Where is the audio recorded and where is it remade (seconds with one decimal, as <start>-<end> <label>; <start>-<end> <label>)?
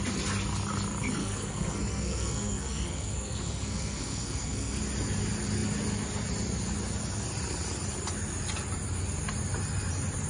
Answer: 0.0-1.2 recorded; 1.2-4.8 remade; 4.8-10.3 recorded